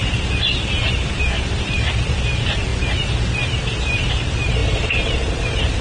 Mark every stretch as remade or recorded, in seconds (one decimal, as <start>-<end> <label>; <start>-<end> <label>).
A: 0.0-5.8 remade